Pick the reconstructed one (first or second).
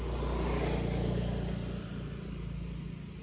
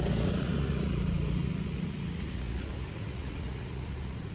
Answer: second